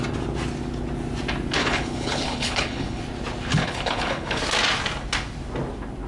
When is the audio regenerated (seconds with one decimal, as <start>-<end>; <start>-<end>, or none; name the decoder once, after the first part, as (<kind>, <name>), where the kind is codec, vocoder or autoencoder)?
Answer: 1.6-3.0 (codec, HILCodec); 3.5-4.4